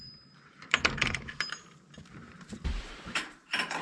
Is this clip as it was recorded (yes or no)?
no